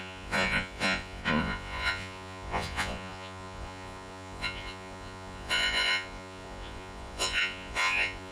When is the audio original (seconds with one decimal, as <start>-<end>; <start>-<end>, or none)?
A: none